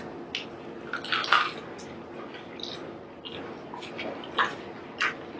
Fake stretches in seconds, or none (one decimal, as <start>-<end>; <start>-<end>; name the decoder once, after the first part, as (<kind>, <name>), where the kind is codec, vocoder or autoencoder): none